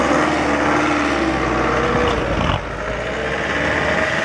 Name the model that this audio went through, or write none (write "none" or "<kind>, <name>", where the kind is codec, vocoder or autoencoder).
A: none